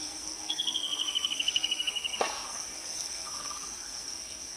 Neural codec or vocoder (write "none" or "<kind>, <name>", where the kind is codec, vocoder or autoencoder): codec, SNAC